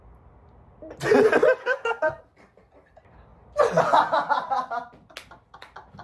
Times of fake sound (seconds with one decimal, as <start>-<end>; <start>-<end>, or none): 1.6-2.2